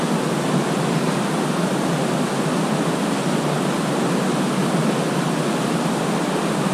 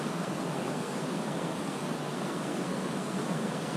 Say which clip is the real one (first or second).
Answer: first